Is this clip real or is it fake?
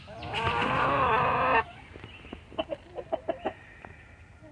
real